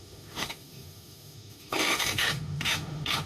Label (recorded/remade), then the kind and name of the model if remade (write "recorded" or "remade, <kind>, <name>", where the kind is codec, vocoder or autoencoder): remade, autoencoder, DAC-VAE